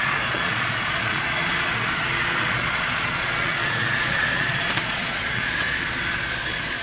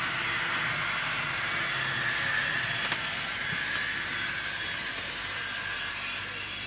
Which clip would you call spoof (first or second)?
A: first